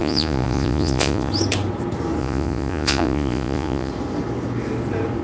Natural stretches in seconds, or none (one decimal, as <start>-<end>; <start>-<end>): 1.3-2.2; 3.9-5.2